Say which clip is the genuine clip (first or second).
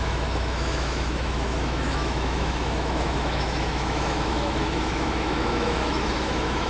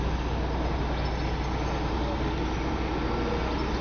second